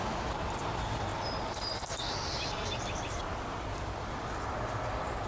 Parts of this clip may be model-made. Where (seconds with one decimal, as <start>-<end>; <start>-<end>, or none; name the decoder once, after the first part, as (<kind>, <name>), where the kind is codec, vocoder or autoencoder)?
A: none